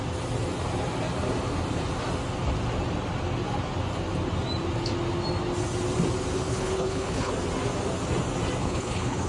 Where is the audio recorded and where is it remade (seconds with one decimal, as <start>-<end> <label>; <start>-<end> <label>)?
0.0-6.5 recorded; 6.5-7.3 remade; 7.3-8.6 recorded; 8.6-9.3 remade